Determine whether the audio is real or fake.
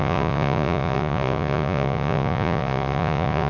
fake